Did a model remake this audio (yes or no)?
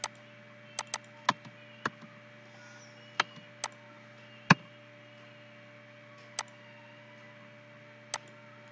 no